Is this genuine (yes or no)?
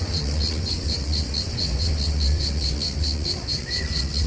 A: no